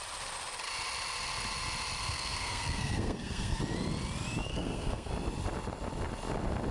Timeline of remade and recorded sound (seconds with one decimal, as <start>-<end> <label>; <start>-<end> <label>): 0.0-2.0 recorded; 2.0-3.6 remade; 3.6-4.5 recorded; 4.5-5.1 remade; 5.1-6.7 recorded